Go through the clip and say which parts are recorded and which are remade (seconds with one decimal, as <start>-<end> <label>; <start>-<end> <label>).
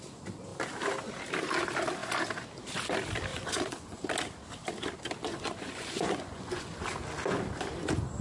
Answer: 0.0-3.3 recorded; 3.3-4.0 remade; 4.0-5.3 recorded; 5.3-6.7 remade; 6.7-8.2 recorded